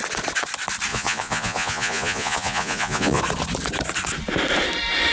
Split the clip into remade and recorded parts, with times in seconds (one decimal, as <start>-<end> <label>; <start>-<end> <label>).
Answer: 0.0-0.9 recorded; 0.9-3.2 remade; 3.2-5.1 recorded